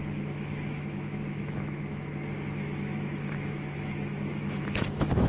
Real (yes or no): no